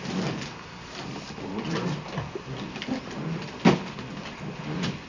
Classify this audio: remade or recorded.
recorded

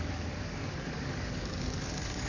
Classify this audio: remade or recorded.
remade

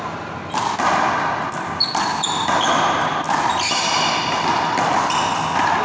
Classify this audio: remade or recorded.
recorded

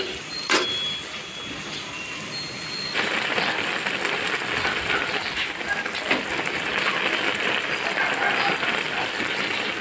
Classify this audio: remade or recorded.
recorded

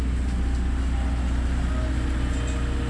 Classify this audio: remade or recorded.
recorded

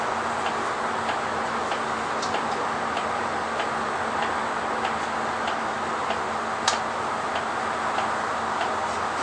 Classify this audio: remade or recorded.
recorded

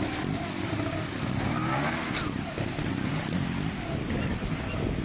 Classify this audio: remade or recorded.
recorded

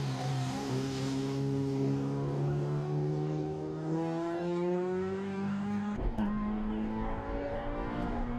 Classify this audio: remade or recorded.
remade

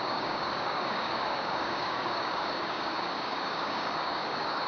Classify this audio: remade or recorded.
remade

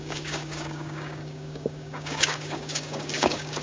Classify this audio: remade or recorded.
remade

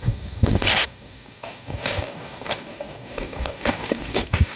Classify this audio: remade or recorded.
remade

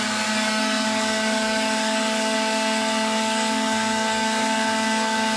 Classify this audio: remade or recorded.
remade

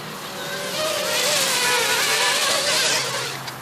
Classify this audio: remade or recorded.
recorded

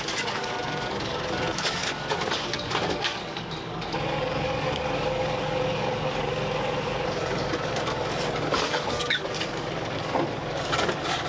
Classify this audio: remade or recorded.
remade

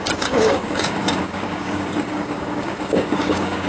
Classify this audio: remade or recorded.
remade